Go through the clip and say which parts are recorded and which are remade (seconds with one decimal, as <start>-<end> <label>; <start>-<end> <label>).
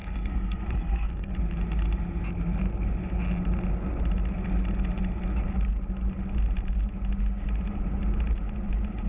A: 0.0-1.3 remade; 1.3-9.1 recorded